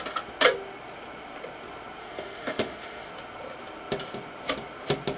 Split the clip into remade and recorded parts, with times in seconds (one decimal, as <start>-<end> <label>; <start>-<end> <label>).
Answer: 0.0-2.0 recorded; 2.0-3.1 remade; 3.1-5.2 recorded